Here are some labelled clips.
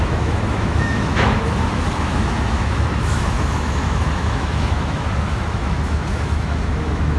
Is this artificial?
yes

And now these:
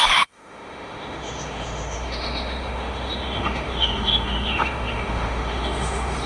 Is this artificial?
yes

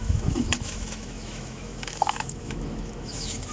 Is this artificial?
yes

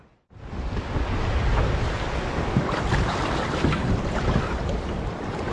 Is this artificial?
no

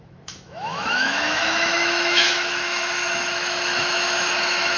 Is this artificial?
yes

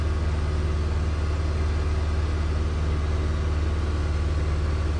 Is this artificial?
no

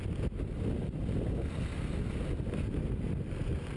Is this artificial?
no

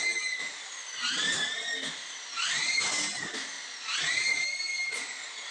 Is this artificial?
no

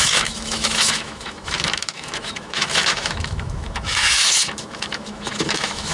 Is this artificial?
yes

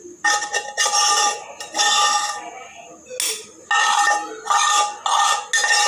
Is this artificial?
no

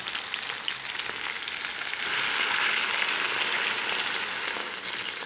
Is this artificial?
no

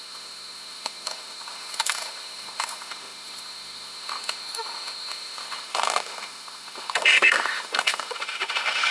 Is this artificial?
yes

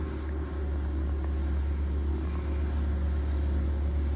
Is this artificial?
no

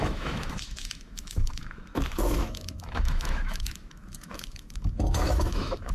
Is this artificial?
yes